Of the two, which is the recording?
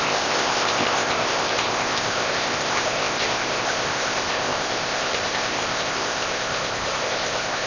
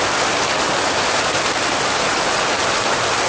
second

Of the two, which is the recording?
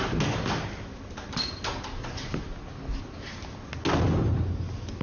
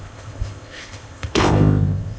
first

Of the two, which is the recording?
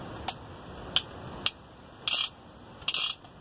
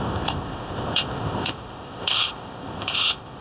first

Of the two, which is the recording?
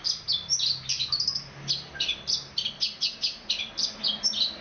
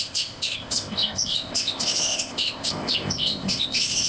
first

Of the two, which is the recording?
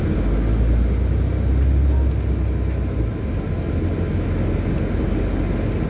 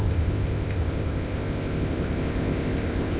first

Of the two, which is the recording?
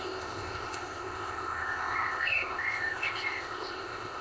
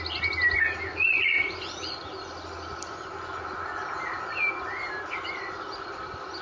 second